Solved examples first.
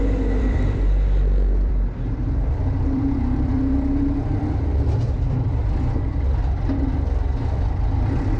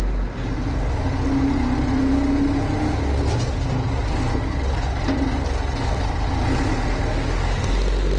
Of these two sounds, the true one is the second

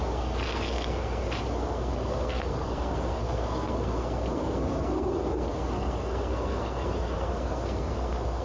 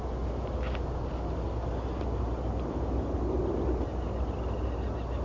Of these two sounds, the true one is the second